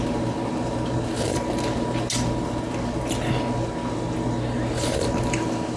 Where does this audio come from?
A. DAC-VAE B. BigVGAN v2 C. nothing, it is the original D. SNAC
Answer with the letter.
C